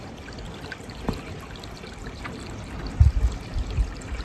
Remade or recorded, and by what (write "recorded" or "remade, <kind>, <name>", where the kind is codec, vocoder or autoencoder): recorded